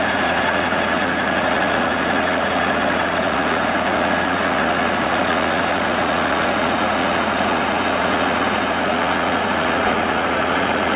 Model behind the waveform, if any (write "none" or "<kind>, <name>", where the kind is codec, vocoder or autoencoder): vocoder, Vocos